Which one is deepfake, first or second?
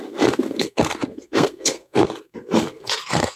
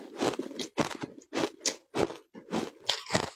first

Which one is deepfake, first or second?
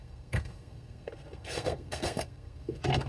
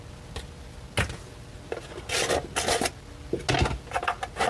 first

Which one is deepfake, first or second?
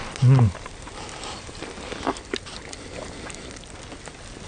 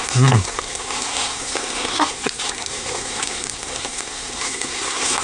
second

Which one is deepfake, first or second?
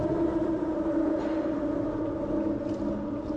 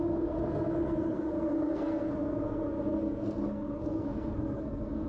second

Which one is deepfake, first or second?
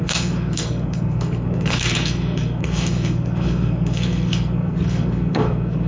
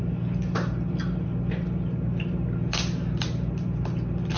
first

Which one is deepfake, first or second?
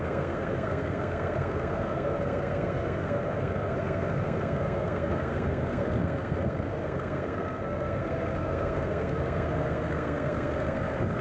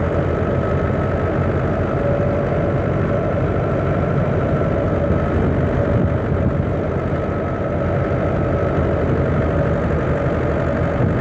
first